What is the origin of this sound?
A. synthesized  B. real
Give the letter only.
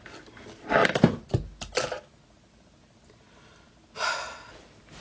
A